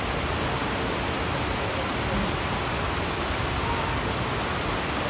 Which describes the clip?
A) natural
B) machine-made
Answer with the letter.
A